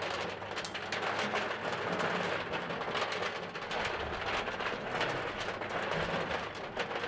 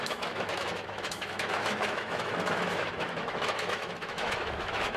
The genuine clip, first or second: first